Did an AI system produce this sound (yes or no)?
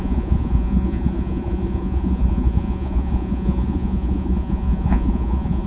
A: yes